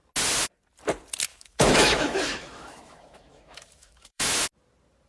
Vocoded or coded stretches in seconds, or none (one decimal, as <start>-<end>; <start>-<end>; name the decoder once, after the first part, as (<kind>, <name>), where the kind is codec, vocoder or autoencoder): 1.3-4.4 (autoencoder, DAC-VAE)